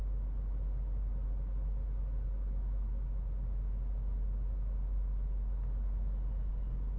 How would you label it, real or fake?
real